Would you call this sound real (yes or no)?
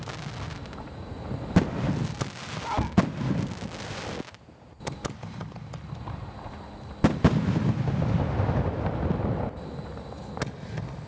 yes